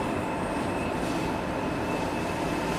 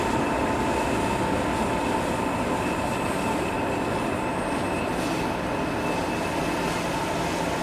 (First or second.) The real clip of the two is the second